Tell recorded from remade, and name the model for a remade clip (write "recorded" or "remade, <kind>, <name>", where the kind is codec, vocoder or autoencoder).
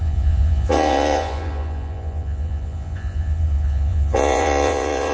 remade, vocoder, Vocos